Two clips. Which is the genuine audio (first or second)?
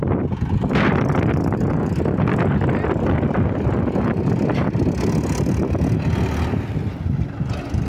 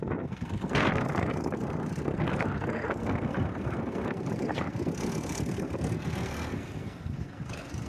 first